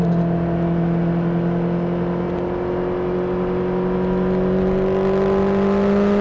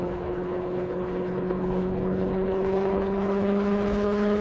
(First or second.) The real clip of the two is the first